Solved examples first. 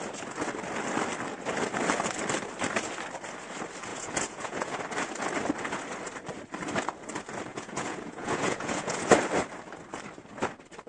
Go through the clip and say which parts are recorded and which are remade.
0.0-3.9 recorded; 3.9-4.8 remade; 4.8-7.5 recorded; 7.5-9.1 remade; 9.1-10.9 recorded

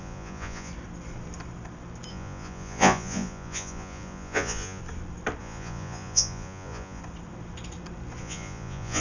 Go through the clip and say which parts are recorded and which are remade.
0.0-0.7 remade; 0.7-2.1 recorded; 2.1-4.8 remade; 4.8-5.4 recorded; 5.4-7.0 remade; 7.0-8.2 recorded; 8.2-9.0 remade

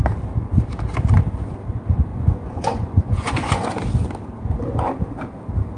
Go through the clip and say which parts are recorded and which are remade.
0.0-2.1 recorded; 2.1-3.7 remade; 3.7-5.8 recorded

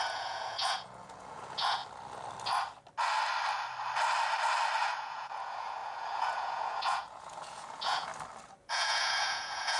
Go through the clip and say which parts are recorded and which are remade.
0.0-1.8 remade; 1.8-4.8 recorded; 4.8-8.1 remade; 8.1-8.6 recorded; 8.6-9.8 remade

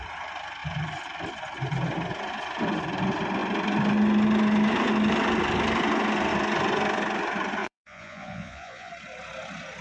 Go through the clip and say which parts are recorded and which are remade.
0.0-7.6 recorded; 7.6-8.9 remade; 8.9-9.8 recorded

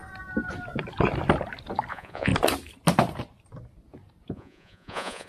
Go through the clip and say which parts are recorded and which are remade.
0.0-1.9 recorded; 1.9-2.3 remade; 2.3-4.3 recorded; 4.3-5.3 remade

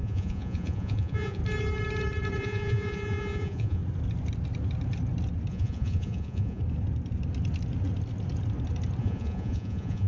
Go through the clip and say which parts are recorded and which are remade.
0.0-1.4 remade; 1.4-2.4 recorded; 2.4-3.8 remade; 3.8-5.5 recorded; 5.5-6.6 remade; 6.6-9.0 recorded; 9.0-10.1 remade

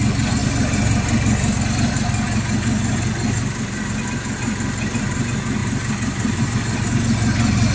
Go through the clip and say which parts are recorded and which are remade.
0.0-7.7 recorded